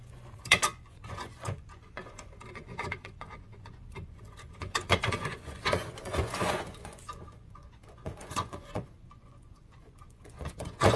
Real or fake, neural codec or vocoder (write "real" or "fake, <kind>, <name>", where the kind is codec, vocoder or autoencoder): fake, vocoder, Vocos